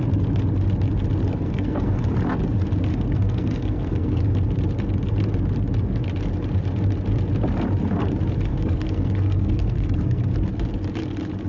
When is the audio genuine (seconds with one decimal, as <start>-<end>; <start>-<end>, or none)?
0.0-1.3; 2.0-2.9; 4.2-8.5; 10.3-11.5